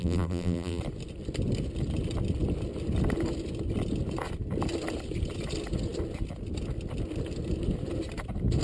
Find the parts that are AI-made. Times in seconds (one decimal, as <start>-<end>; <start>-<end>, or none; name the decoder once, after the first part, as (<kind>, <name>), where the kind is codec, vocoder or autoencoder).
0.0-0.8 (vocoder, BigVGAN v2)

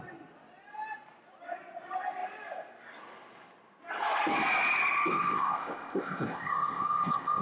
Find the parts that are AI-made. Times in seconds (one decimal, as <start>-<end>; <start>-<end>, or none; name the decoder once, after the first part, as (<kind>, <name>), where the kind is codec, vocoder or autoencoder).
5.1-7.4 (codec, ZipCodec)

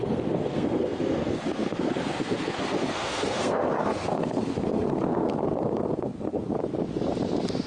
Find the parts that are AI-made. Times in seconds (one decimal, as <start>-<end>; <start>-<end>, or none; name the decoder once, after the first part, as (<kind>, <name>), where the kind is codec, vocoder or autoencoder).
0.0-6.5 (codec, SNAC)